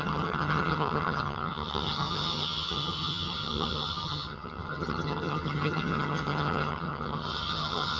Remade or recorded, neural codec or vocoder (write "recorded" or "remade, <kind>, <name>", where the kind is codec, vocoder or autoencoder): remade, vocoder, HiFi-GAN